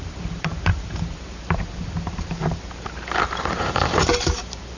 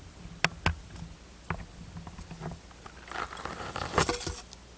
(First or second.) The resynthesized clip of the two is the first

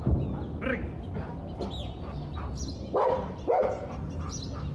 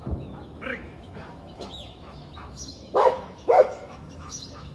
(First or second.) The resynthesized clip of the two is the second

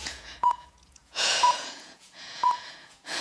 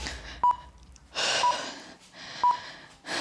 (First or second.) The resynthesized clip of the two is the first